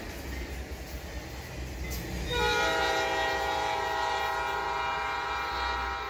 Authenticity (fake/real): real